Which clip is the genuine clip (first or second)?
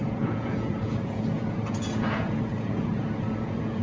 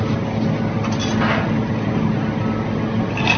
second